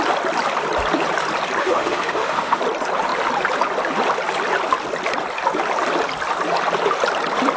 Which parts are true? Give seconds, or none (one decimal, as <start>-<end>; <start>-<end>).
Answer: 0.0-1.6; 2.6-7.6